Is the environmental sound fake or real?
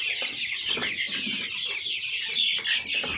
real